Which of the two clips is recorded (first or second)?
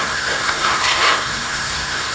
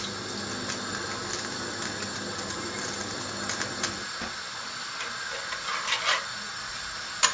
second